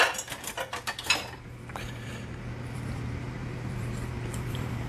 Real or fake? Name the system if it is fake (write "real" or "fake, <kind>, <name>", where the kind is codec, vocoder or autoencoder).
fake, vocoder, BigVGAN v2